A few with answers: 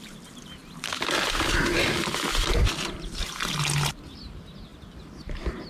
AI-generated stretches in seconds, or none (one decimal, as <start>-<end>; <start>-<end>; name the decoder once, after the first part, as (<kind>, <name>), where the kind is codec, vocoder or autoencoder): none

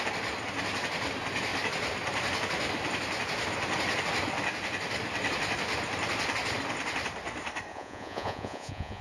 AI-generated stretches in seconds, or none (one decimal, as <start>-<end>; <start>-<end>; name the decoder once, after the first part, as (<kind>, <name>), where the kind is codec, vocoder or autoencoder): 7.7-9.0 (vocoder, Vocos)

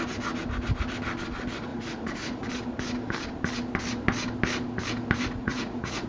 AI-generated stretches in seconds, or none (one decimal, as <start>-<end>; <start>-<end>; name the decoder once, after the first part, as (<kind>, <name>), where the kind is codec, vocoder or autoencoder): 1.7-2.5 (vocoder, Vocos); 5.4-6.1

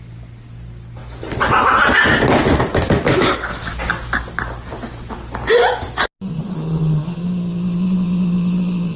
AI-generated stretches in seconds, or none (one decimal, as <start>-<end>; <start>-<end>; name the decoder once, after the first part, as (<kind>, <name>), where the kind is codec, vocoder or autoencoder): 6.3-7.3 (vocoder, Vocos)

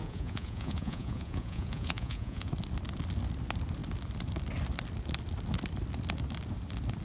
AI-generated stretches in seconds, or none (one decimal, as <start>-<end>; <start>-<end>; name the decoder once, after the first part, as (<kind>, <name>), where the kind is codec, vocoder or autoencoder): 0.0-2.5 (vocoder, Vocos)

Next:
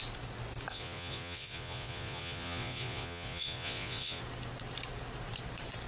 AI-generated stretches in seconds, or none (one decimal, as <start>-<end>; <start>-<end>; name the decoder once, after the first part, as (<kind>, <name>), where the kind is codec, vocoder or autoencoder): 0.7-4.2 (vocoder, Vocos)